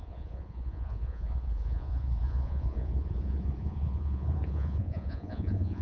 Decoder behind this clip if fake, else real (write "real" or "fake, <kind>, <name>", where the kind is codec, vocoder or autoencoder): fake, vocoder, Vocos